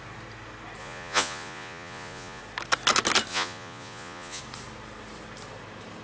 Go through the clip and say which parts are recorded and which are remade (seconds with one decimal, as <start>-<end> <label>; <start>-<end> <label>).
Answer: 0.0-0.8 recorded; 0.8-2.4 remade; 2.4-3.3 recorded; 3.3-4.4 remade; 4.4-6.0 recorded